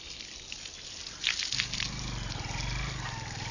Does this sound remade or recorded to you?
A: recorded